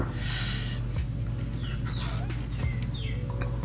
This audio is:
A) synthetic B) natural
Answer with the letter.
B